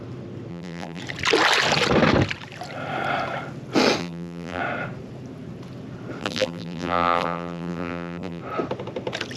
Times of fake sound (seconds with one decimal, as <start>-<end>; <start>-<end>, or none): 0.5-1.0; 4.0-4.6; 6.2-8.4